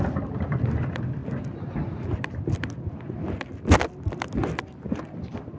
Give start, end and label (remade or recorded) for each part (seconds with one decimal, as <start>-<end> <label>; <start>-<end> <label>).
0.0-5.6 recorded